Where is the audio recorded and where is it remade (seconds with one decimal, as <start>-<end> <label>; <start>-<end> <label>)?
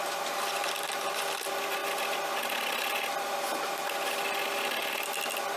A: 0.0-1.8 remade; 1.8-5.6 recorded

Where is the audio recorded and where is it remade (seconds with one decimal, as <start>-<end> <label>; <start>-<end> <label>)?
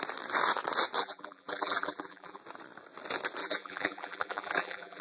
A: 0.0-1.0 recorded; 1.0-2.4 remade; 2.4-3.4 recorded; 3.4-5.0 remade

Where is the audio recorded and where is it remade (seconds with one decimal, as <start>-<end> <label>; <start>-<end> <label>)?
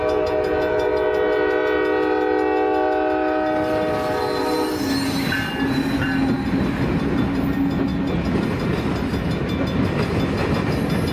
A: 0.0-11.1 recorded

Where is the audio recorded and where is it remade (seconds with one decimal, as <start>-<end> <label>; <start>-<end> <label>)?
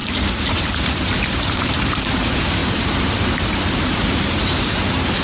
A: 0.0-0.5 recorded; 0.5-5.2 remade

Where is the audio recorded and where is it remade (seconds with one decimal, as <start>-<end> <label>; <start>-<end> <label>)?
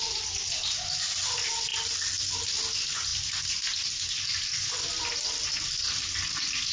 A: 0.0-6.7 recorded